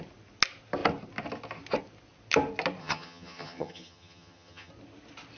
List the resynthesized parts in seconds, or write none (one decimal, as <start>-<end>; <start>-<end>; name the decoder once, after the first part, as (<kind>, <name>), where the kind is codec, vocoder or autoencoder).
2.8-4.7 (vocoder, HiFi-GAN)